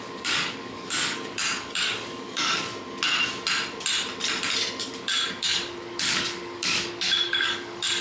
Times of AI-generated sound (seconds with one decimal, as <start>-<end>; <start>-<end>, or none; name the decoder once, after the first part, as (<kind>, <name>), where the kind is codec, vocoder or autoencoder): 0.0-2.7 (codec, DAC); 4.8-8.0